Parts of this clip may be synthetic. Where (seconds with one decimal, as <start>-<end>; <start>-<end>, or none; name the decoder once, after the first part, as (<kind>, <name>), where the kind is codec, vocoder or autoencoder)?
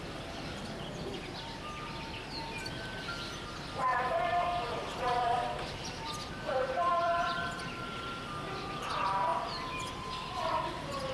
1.1-2.2 (vocoder, BigVGAN v2); 3.9-8.0; 9.3-10.7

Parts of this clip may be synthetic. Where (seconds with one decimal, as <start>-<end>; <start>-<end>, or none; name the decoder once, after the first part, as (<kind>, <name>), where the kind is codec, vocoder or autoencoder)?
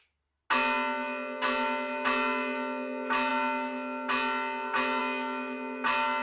none